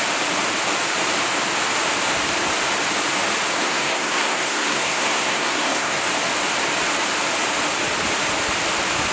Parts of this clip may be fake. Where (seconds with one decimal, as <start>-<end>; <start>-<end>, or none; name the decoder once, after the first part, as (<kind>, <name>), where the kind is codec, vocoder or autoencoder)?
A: 3.6-6.0 (codec, SNAC)